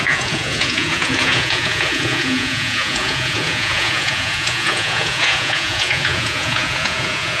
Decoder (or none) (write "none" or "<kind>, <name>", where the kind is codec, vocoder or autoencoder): vocoder, Vocos